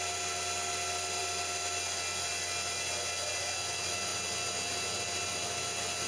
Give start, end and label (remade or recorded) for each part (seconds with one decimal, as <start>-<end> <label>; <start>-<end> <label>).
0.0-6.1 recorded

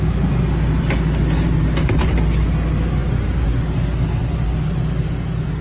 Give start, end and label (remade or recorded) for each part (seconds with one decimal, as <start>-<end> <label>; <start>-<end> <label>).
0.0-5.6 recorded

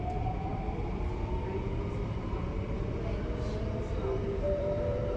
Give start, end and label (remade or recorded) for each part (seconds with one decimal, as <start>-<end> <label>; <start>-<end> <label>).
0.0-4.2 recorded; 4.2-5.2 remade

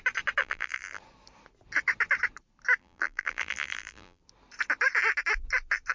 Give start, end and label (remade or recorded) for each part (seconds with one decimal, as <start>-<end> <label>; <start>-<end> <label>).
0.0-0.4 recorded; 0.4-1.0 remade; 1.0-2.8 recorded; 2.8-4.2 remade; 4.2-5.9 recorded

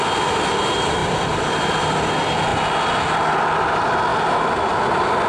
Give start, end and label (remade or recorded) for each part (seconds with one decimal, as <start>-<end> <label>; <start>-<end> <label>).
0.0-1.0 recorded; 1.0-2.1 remade; 2.1-4.1 recorded; 4.1-5.3 remade

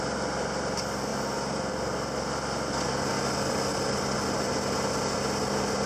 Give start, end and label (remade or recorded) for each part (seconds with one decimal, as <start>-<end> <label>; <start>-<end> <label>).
0.0-1.1 recorded; 1.1-1.7 remade; 1.7-5.9 recorded

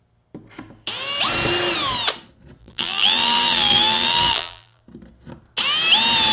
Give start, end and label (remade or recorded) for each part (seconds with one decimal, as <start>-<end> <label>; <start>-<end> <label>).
0.0-2.6 recorded; 2.6-4.8 remade; 4.8-6.3 recorded